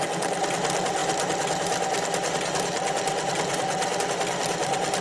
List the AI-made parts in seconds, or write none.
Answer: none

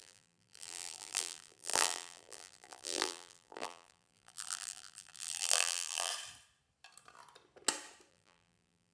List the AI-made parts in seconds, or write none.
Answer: 0.0-6.1; 8.1-8.9

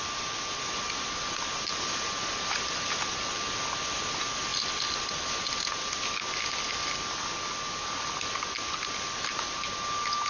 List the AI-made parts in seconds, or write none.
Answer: none

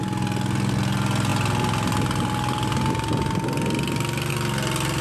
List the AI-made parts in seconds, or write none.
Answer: none

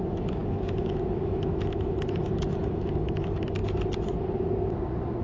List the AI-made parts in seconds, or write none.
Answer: 0.0-3.6

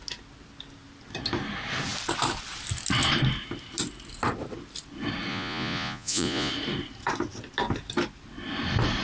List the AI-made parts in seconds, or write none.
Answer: 5.3-6.5